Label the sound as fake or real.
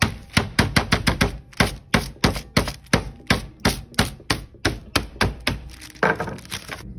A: real